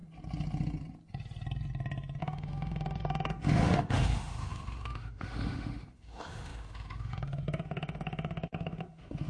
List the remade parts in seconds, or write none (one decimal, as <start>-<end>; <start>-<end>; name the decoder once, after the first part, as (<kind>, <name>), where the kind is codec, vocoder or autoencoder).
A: 2.2-9.3 (autoencoder, DAC-VAE)